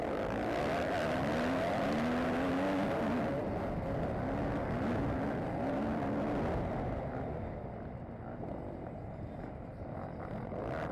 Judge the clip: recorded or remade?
recorded